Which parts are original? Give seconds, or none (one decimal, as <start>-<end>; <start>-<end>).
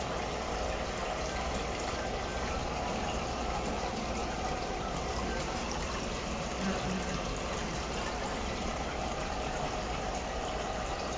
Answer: none